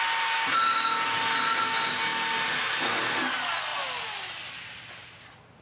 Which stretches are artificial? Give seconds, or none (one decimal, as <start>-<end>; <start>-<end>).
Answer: none